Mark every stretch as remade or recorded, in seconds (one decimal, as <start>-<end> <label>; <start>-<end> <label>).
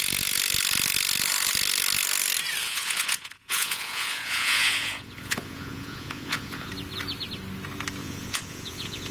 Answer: 0.0-2.6 recorded; 2.6-6.7 remade; 6.7-8.0 recorded; 8.0-9.1 remade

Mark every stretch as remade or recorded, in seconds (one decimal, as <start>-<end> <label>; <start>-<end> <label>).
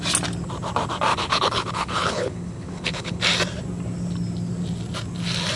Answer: 0.0-1.1 recorded; 1.1-3.2 remade; 3.2-5.6 recorded